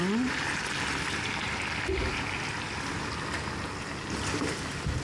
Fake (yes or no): no